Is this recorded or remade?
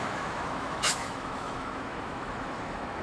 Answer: remade